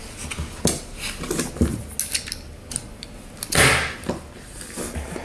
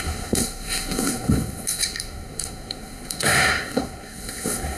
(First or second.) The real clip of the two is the first